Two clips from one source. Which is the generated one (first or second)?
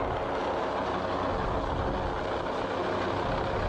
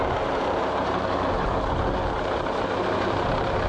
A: second